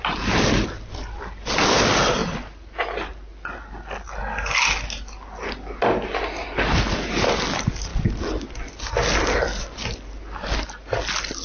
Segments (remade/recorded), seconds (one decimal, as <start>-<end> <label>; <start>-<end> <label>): 0.0-11.4 recorded